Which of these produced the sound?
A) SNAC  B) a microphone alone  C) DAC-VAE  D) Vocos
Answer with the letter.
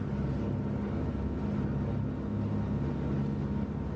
B